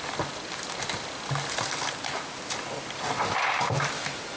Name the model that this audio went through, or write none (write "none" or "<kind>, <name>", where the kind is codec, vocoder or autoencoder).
none